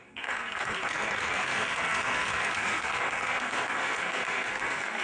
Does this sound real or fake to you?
fake